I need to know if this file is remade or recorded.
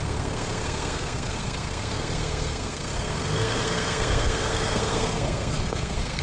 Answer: remade